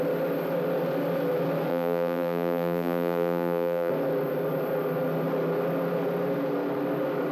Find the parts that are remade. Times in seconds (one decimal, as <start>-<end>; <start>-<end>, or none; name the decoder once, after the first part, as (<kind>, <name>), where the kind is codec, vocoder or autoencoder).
1.7-3.9 (vocoder, BigVGAN v2)